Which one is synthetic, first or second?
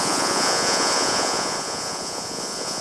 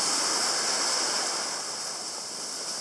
first